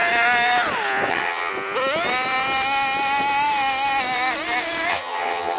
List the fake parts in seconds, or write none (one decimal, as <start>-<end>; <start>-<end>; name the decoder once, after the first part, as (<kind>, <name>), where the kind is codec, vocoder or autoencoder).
1.1-1.5 (vocoder, HiFi-GAN); 4.9-5.6